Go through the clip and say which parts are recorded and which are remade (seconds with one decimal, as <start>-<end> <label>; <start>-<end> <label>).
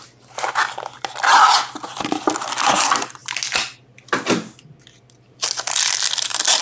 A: 0.0-6.6 recorded